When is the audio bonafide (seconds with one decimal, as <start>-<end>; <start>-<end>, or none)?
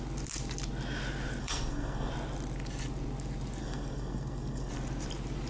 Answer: 0.0-1.4; 2.1-3.6; 4.7-5.5